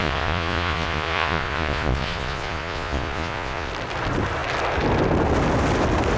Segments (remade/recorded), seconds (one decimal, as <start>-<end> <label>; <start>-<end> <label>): 0.0-3.7 remade; 3.7-6.2 recorded